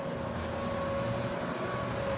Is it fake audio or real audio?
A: real